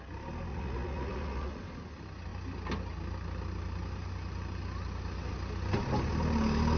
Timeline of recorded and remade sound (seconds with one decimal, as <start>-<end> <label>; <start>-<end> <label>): 0.0-0.5 recorded; 0.5-1.6 remade; 1.6-6.8 recorded